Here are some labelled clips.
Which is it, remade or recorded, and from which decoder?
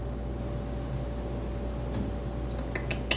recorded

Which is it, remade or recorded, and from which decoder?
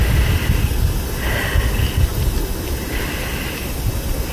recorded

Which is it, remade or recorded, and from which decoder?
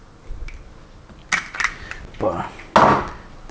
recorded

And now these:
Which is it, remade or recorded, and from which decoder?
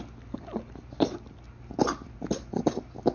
recorded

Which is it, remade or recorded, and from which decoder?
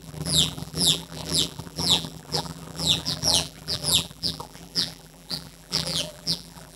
remade, vocoder, BigVGAN v2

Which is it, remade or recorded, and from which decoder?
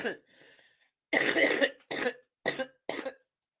recorded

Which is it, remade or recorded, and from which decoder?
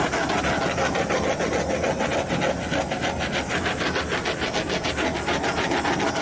recorded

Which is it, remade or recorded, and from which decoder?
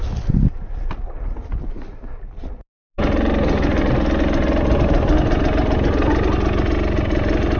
recorded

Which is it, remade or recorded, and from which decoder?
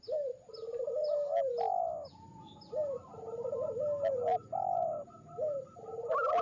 recorded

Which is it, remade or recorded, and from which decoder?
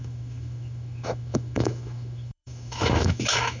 remade, autoencoder, DAC-VAE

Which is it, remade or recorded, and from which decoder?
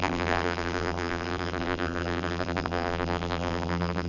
remade, vocoder, BigVGAN v2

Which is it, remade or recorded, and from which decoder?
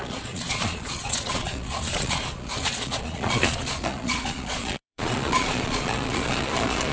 remade, vocoder, Vocos